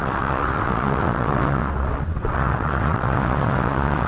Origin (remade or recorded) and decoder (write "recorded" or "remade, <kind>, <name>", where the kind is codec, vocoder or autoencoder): remade, vocoder, WaveNeXt